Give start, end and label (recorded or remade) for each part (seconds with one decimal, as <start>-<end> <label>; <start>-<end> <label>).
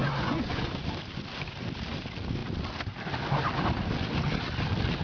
0.0-0.6 remade; 0.6-5.0 recorded